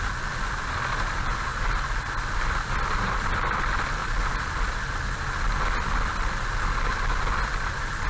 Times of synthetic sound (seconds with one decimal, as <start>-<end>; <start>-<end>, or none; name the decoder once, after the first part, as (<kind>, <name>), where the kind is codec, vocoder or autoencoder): none